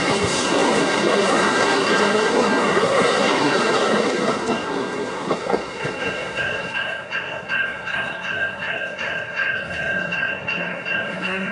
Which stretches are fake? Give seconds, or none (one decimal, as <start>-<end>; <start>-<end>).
0.0-11.5

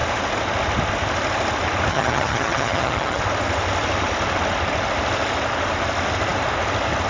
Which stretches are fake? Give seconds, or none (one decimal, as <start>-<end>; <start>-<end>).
1.9-3.2